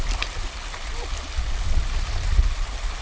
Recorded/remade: recorded